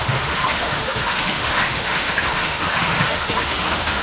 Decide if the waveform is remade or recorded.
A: remade